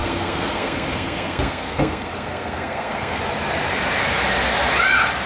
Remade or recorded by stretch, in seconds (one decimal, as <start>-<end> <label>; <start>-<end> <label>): 0.0-3.2 remade; 3.2-5.3 recorded